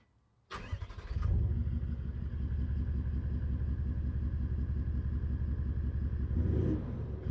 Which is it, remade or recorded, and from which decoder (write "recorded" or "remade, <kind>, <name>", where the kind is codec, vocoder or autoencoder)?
recorded